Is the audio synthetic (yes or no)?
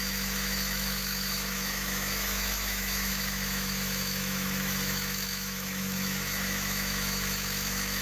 yes